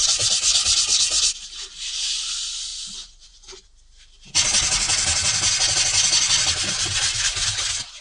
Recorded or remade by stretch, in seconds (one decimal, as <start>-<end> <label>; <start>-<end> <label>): 0.0-2.7 recorded; 2.7-3.7 remade; 3.7-8.0 recorded

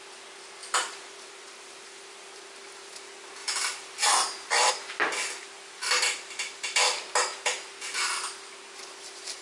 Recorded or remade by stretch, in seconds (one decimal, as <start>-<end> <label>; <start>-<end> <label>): 0.0-0.6 recorded; 0.6-2.4 remade; 2.4-3.4 recorded; 3.4-4.7 remade; 4.7-9.4 recorded